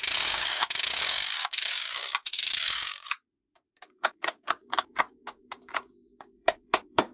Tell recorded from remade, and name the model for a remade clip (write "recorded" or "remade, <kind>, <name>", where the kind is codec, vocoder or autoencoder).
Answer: remade, codec, DAC